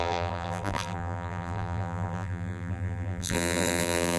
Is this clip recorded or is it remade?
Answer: remade